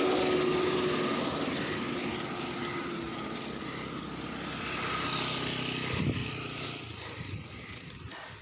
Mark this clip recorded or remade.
recorded